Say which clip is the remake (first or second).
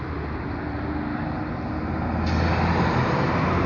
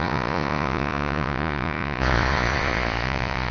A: second